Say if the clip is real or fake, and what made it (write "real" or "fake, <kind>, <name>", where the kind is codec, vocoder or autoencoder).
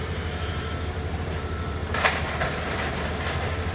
real